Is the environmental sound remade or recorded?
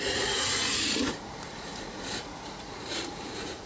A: remade